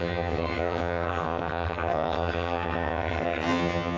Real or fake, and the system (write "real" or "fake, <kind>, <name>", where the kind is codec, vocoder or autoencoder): fake, vocoder, HiFi-GAN